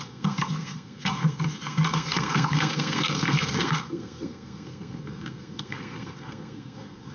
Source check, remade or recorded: remade